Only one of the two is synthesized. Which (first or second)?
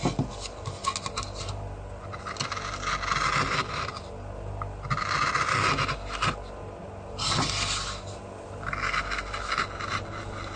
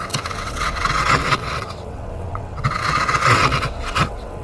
second